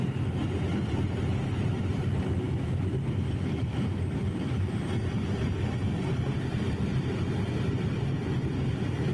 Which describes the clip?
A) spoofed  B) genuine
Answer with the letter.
B